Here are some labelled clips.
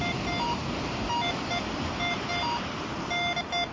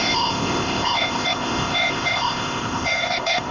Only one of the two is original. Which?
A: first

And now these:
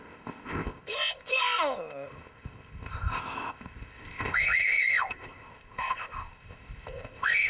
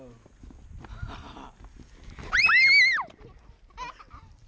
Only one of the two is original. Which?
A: second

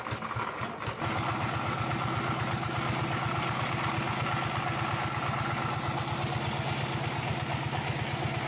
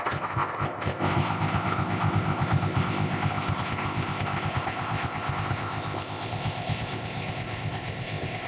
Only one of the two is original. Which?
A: first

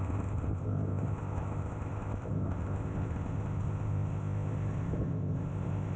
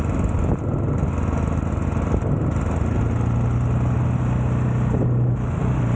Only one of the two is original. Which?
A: second